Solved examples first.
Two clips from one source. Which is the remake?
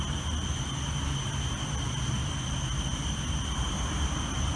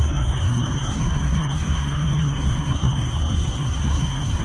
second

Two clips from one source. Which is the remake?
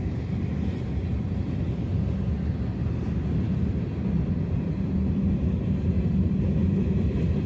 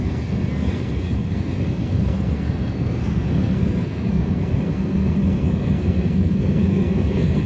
second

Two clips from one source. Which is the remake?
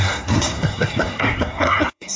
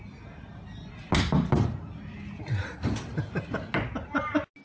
first